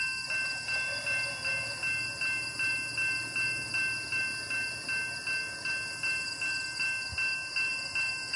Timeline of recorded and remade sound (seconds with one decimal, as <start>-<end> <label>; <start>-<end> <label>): 0.0-8.4 recorded